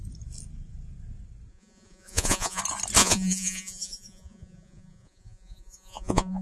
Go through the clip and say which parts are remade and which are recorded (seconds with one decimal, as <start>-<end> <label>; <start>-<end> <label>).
0.0-1.5 recorded; 1.5-2.6 remade; 2.6-3.0 recorded; 3.0-6.4 remade